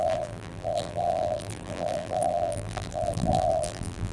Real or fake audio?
fake